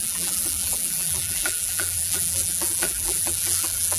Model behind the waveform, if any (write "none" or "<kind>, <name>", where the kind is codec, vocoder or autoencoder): vocoder, BigVGAN v2